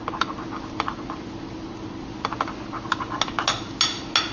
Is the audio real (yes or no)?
yes